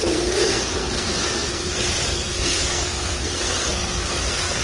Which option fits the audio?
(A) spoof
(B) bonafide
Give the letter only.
A